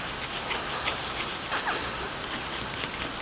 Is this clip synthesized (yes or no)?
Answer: no